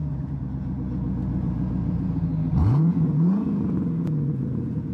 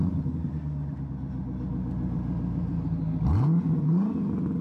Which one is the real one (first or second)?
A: second